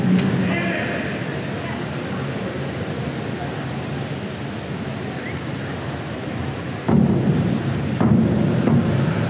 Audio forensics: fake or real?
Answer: real